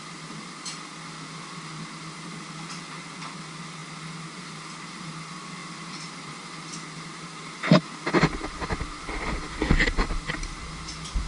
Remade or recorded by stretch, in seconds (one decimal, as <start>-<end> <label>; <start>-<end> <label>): 0.0-11.3 recorded